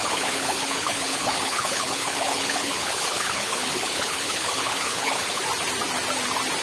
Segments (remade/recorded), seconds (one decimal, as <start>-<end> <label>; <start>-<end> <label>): 0.0-5.4 remade; 5.4-6.6 recorded